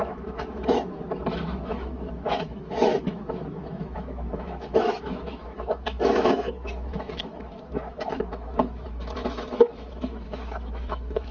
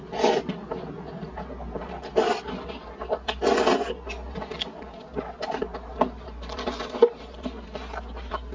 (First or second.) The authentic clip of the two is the second